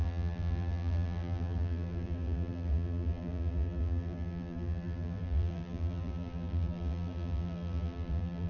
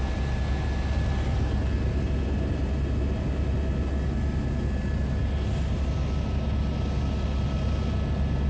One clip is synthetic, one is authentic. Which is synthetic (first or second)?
first